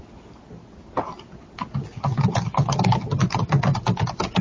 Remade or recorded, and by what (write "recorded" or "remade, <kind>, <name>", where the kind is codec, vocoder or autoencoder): recorded